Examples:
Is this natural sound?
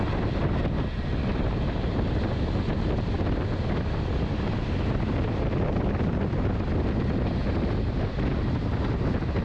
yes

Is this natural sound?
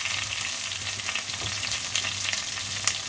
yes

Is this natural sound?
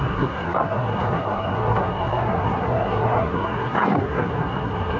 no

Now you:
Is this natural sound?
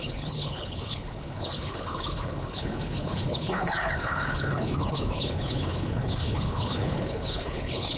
no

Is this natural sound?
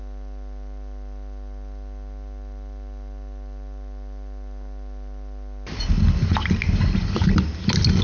yes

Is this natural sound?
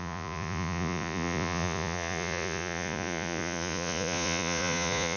no